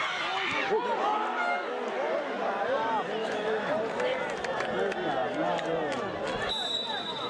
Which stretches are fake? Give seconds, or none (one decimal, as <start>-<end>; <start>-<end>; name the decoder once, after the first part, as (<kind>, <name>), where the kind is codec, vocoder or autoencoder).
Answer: 3.2-3.7 (autoencoder, DAC-VAE)

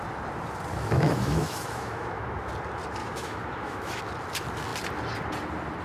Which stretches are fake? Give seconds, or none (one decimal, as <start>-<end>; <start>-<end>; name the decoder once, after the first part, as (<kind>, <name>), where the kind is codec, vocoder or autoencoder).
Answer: 0.7-2.5 (autoencoder, DAC-VAE); 3.0-4.0

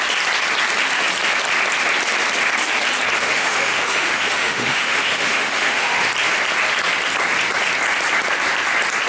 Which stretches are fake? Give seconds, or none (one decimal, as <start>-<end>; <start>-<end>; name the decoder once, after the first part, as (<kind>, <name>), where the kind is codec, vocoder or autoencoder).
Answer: 3.2-6.0 (autoencoder, DAC-VAE)

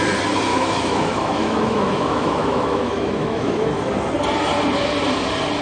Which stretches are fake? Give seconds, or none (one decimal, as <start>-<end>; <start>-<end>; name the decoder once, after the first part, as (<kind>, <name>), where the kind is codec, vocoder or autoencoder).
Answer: 0.5-3.9 (autoencoder, DAC-VAE)

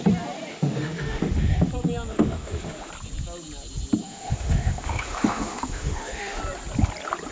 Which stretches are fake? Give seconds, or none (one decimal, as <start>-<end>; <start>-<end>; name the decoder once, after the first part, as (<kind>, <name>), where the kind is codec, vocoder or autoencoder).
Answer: 0.5-1.7 (autoencoder, DAC-VAE); 2.1-2.9; 4.0-6.4

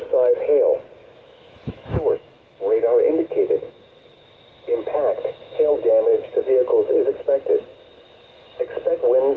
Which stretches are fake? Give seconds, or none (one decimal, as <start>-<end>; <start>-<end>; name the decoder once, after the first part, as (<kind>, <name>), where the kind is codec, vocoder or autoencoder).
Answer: 1.0-3.8 (autoencoder, DAC-VAE); 6.1-7.1

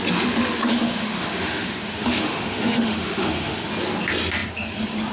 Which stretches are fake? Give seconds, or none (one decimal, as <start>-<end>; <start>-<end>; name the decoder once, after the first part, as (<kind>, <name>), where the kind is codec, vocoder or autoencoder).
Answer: 0.6-3.7 (autoencoder, DAC-VAE)

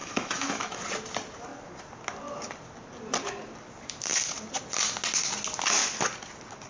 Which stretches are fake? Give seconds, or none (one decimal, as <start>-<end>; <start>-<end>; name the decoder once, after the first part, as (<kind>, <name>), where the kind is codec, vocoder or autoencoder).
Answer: 0.0-0.8 (autoencoder, DAC-VAE)